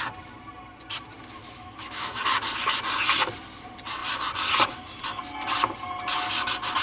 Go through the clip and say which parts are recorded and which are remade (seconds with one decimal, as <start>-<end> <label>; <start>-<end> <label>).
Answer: 0.0-1.4 recorded; 1.4-2.2 remade; 2.2-6.8 recorded